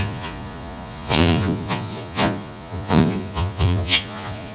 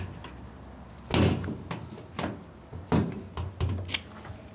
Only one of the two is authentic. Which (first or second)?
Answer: second